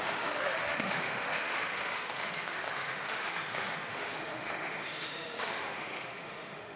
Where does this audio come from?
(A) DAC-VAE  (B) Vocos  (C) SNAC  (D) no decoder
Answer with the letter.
A